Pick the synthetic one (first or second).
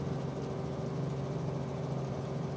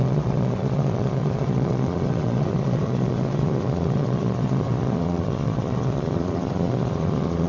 second